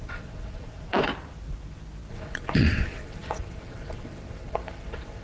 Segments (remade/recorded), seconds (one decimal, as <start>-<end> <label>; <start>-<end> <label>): 0.0-1.1 remade; 1.1-2.1 recorded; 2.1-5.2 remade